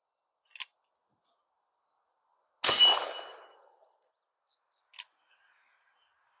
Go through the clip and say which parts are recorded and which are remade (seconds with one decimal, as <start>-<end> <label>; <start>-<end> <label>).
0.0-6.4 recorded